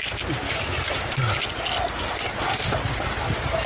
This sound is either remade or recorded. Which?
recorded